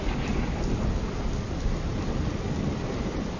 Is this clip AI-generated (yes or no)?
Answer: no